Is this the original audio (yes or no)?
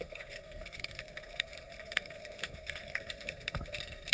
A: no